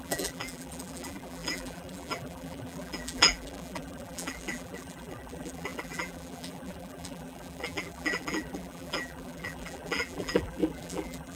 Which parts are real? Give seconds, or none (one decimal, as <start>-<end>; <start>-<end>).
none